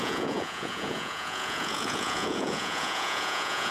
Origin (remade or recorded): remade